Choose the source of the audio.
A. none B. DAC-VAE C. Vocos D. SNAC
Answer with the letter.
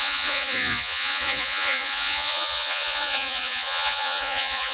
C